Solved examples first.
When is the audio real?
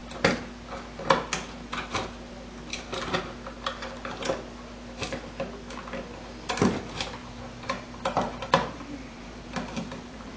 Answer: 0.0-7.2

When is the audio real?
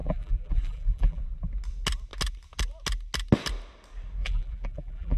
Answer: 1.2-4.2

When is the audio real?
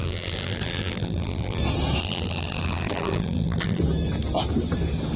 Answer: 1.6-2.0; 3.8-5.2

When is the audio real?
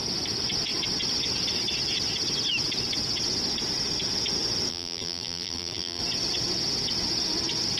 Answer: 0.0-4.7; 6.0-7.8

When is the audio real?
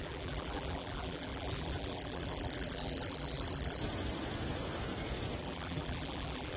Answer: 3.8-5.4